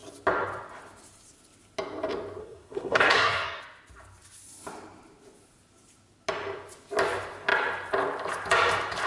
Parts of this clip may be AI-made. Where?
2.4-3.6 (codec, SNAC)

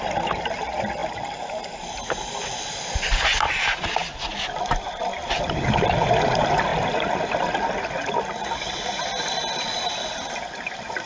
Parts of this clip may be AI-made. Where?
none

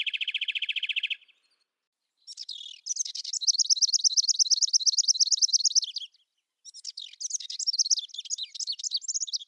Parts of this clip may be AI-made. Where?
none

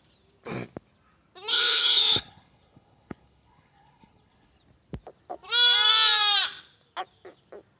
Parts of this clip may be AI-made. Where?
1.5-4.5 (codec, HILCodec)

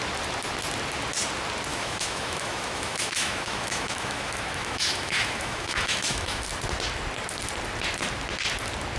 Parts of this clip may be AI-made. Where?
1.7-6.5 (autoencoder, DAC-VAE)